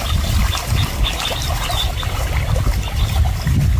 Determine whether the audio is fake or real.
real